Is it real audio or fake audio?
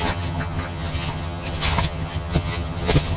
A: fake